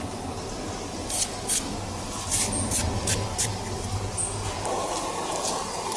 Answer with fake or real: real